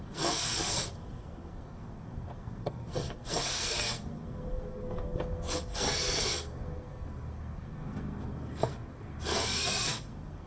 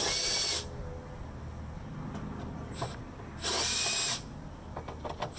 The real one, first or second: second